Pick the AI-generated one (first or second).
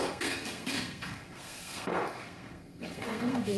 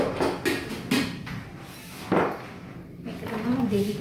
first